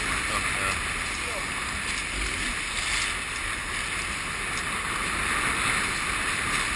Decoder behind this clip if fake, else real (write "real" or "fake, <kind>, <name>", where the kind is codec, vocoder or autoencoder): real